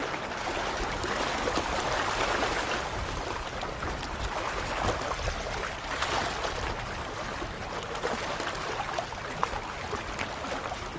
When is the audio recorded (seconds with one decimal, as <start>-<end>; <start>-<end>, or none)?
0.0-11.0

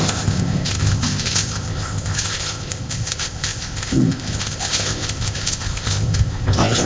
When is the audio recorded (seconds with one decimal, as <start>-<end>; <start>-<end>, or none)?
none

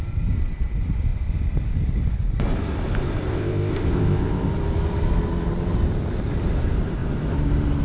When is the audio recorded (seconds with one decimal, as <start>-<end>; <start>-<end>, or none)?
0.0-3.3; 4.5-7.8

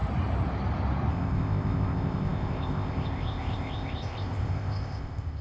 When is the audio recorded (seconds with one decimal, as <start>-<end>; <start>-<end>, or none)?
0.0-1.1

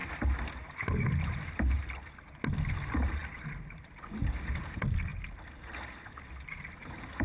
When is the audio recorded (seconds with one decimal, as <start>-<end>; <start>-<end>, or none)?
0.0-7.2

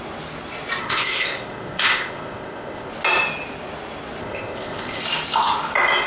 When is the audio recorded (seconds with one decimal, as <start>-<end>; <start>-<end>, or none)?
0.0-0.8; 2.9-4.2; 5.0-6.1

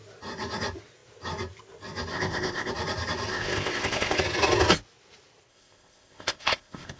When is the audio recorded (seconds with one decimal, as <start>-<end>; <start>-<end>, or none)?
0.0-2.1; 2.7-3.3; 4.2-5.5

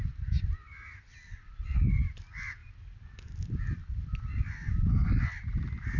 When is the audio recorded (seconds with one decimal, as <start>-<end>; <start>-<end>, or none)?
0.0-6.0